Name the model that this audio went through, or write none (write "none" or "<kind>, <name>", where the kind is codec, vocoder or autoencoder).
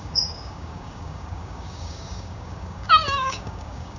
codec, DAC